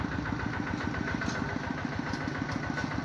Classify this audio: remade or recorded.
recorded